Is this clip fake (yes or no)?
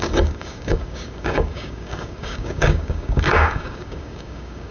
yes